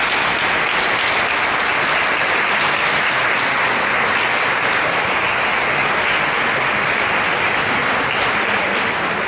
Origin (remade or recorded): recorded